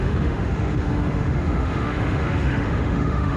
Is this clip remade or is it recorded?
remade